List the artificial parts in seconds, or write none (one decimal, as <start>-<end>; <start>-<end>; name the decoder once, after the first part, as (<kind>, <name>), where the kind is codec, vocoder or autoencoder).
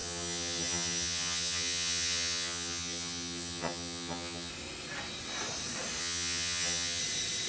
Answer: 0.0-4.5 (vocoder, HiFi-GAN); 6.0-7.0